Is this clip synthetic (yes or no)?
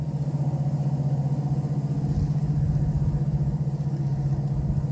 no